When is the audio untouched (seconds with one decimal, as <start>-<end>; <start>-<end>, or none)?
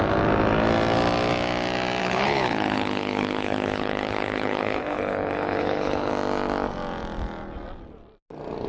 0.0-2.0; 6.1-8.7